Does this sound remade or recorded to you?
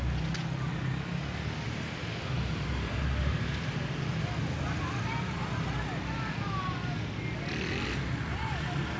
recorded